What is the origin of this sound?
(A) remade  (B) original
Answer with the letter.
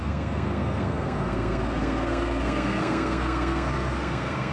A